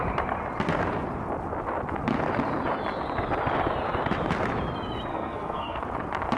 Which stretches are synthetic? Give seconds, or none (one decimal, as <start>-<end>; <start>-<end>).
5.1-5.8